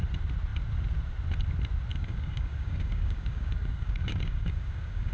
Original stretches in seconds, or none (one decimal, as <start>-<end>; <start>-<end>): 0.0-1.9